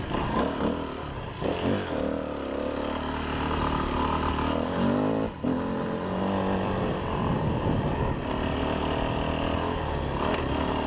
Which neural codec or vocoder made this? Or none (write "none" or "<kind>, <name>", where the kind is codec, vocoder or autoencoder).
none